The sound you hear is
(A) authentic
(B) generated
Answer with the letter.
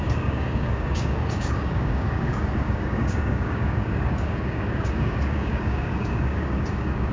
B